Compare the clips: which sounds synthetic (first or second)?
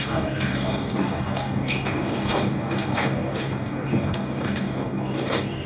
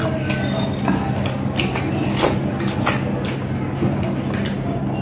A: first